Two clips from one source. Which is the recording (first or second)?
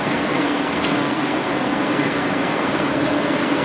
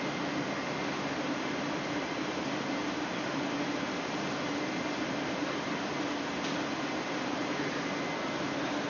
second